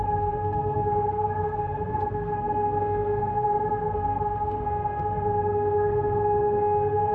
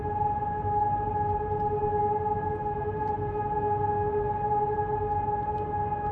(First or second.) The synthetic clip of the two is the first